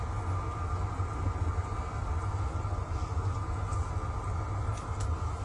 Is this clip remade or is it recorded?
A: recorded